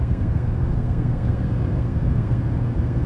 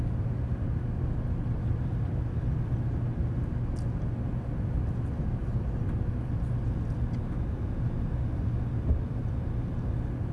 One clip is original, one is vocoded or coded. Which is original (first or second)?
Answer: second